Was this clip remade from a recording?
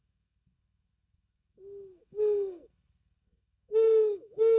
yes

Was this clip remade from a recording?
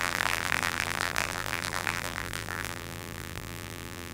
yes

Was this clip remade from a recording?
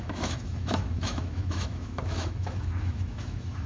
yes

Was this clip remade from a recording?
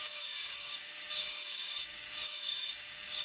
yes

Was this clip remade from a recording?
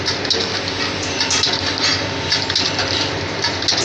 no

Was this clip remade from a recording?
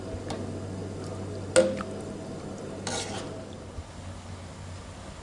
no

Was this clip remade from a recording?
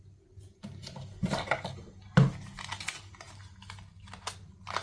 no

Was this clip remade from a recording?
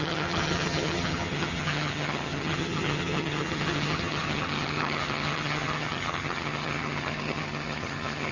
yes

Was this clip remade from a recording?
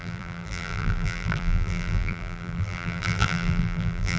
yes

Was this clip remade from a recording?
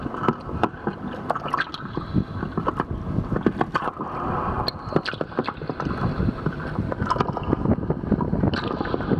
no